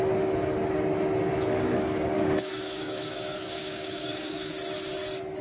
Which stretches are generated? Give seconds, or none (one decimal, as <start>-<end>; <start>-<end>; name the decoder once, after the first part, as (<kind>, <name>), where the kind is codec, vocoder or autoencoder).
1.3-4.5 (codec, DAC)